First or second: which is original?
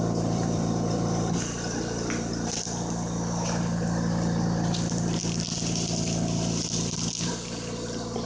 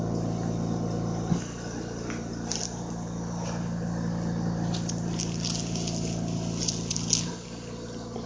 second